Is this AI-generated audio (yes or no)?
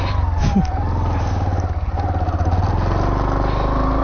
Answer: no